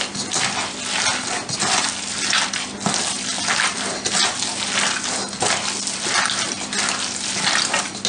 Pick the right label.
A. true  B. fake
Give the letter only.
A